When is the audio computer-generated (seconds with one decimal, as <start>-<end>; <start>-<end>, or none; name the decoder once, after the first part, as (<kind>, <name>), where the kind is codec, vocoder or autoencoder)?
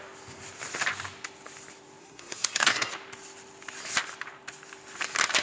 2.0-2.9 (codec, SNAC)